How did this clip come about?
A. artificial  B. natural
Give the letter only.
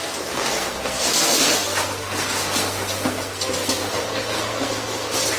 A